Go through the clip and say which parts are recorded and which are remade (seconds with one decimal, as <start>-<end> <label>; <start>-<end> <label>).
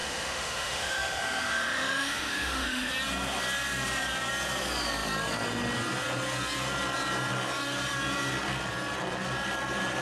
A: 0.0-2.9 remade; 2.9-10.0 recorded